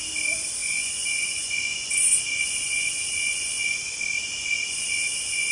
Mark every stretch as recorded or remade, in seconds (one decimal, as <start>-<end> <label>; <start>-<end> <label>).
0.0-0.6 recorded; 0.6-3.9 remade; 3.9-4.4 recorded; 4.4-5.5 remade